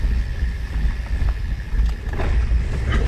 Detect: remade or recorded recorded